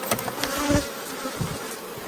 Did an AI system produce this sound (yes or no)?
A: no